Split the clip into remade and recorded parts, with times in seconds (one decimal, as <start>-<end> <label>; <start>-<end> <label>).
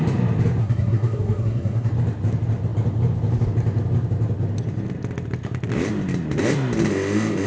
0.0-0.6 recorded; 0.6-1.9 remade; 1.9-7.5 recorded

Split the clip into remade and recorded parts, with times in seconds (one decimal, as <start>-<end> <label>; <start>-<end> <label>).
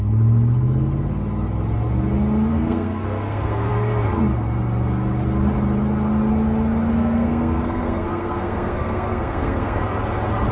0.0-2.5 recorded; 2.5-3.7 remade; 3.7-6.9 recorded; 6.9-9.8 remade; 9.8-10.5 recorded